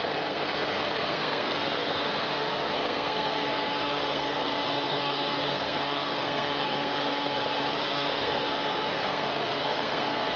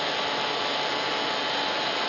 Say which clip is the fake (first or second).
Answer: first